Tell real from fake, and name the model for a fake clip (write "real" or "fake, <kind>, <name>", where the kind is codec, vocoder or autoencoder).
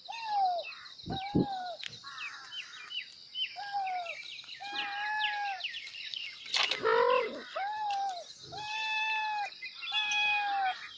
real